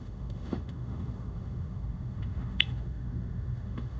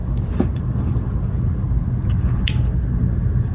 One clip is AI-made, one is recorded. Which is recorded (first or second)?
second